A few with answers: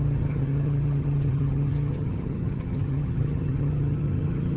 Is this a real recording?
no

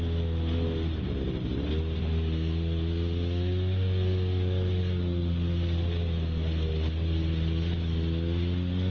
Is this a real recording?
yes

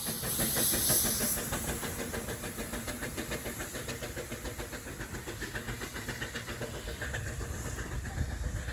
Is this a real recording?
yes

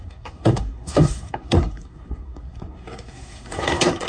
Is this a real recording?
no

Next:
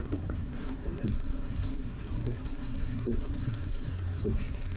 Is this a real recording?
no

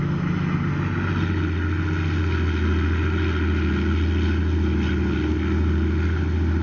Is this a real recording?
yes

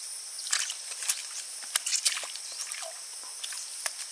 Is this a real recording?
yes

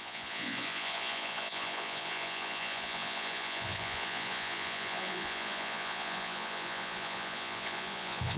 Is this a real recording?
no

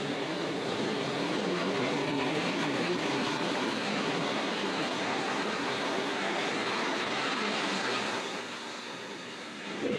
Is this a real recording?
no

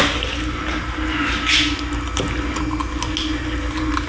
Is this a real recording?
yes